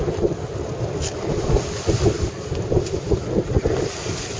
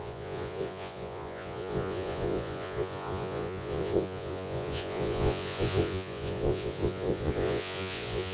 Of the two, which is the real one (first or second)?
first